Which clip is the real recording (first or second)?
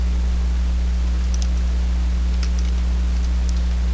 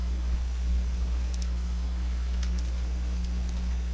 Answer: first